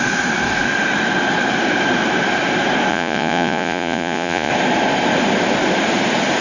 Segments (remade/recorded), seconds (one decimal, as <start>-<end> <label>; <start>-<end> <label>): 0.0-2.9 recorded; 2.9-4.5 remade; 4.5-6.4 recorded